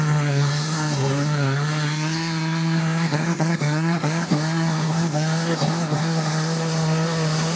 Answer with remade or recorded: remade